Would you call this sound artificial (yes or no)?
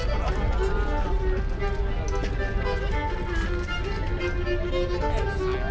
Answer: no